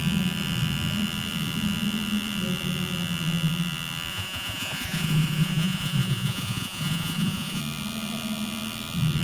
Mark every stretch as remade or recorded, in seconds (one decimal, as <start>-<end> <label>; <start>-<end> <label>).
0.0-4.1 recorded; 4.1-7.6 remade; 7.6-9.2 recorded